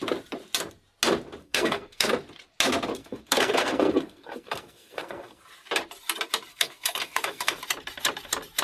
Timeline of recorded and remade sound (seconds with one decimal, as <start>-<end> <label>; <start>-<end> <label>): 0.0-1.4 recorded; 1.4-2.1 remade; 2.1-3.0 recorded; 3.0-5.4 remade; 5.4-6.5 recorded; 6.5-7.6 remade; 7.6-8.6 recorded